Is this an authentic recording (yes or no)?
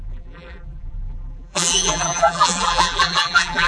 no